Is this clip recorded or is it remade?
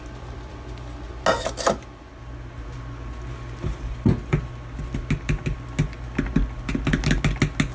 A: recorded